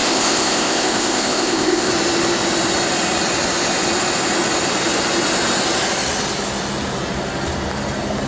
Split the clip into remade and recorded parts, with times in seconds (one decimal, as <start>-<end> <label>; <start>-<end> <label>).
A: 0.0-1.9 remade; 1.9-8.3 recorded